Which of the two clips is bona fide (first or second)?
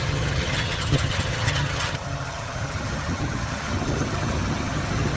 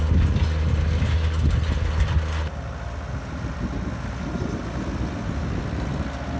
second